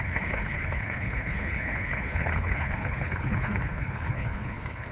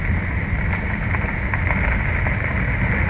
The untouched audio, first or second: second